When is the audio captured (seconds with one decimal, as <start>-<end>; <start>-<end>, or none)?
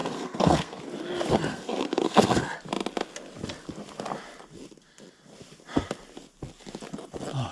0.8-1.5; 2.4-7.5